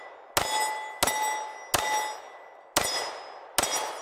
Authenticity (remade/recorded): recorded